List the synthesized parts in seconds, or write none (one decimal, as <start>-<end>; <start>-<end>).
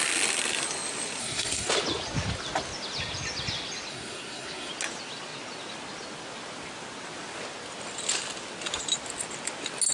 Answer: 1.2-1.7; 3.9-4.7